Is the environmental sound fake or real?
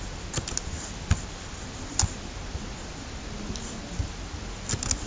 real